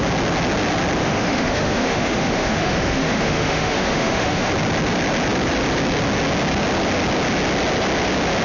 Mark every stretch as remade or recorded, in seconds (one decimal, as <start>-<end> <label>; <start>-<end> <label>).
0.0-1.0 recorded; 1.0-4.5 remade; 4.5-8.4 recorded